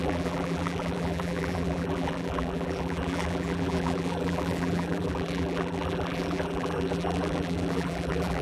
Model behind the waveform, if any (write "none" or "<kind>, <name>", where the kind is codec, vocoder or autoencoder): vocoder, BigVGAN v2